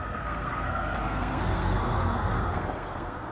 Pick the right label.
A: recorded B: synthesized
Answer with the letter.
B